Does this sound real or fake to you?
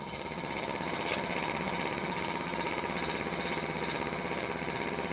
fake